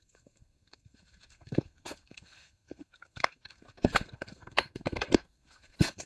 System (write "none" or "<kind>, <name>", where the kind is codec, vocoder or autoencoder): codec, SNAC